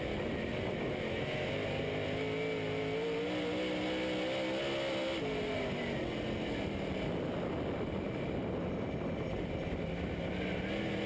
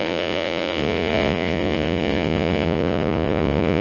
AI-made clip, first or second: second